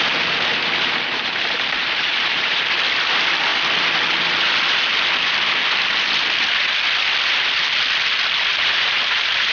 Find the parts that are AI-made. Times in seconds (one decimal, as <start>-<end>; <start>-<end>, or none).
0.5-1.3; 1.8-2.6; 8.5-9.5